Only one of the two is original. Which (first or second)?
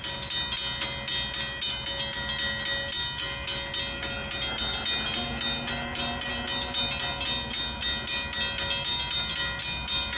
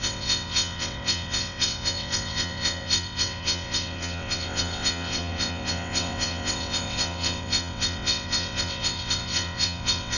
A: first